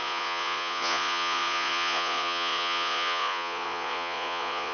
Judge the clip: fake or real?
fake